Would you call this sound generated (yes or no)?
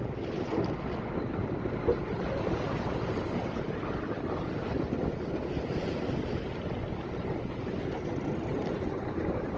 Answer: no